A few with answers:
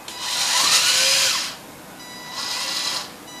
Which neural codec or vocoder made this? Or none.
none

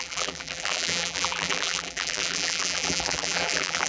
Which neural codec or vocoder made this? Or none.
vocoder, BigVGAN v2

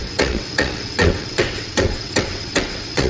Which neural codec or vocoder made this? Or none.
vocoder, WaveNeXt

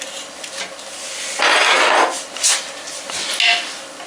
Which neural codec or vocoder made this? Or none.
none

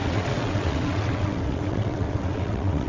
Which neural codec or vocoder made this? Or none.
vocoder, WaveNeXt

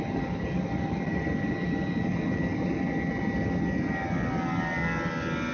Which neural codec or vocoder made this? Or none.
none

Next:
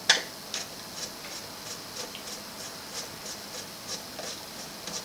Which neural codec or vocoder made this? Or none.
none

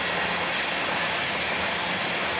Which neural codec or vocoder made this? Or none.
none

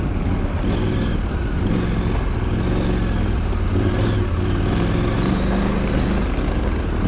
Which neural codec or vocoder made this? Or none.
none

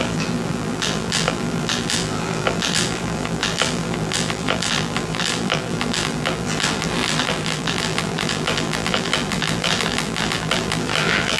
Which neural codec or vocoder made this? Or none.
vocoder, BigVGAN v2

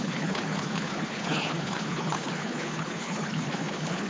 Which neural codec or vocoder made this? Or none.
codec, HILCodec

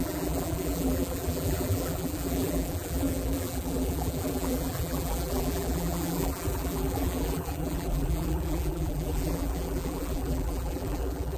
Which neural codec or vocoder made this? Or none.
vocoder, BigVGAN v2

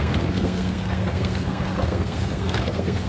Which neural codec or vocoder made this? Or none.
codec, SNAC